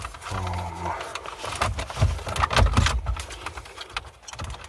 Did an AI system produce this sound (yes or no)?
no